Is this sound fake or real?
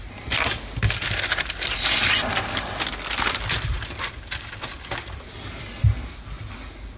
real